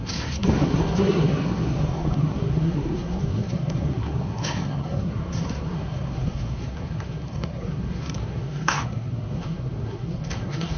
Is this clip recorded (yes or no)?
no